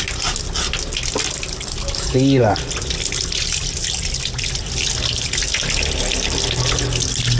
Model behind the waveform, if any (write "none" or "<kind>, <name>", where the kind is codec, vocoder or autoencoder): none